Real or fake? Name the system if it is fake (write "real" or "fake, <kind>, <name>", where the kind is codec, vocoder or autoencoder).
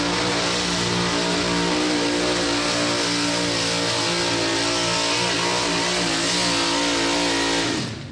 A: real